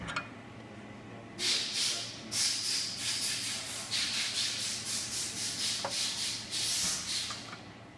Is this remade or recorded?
recorded